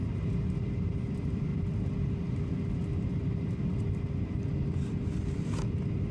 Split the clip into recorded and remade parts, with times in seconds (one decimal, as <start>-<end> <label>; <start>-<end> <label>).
0.0-1.5 remade; 1.5-5.2 recorded; 5.2-6.1 remade